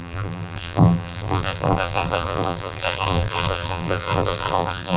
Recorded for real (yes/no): no